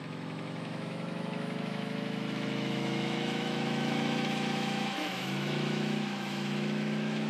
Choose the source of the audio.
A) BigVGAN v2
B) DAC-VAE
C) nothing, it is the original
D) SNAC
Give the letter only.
B